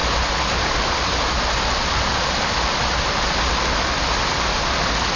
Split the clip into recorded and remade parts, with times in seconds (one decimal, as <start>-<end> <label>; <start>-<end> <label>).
0.0-5.2 recorded